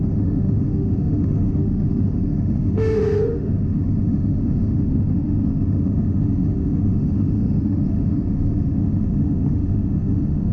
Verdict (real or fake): fake